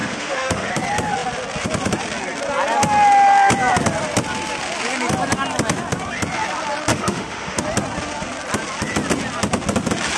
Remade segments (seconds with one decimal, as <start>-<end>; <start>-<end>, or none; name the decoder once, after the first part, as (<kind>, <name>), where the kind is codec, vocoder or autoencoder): 0.0-0.7 (autoencoder, DAC-VAE); 6.9-7.6